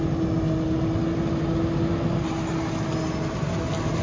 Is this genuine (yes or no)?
yes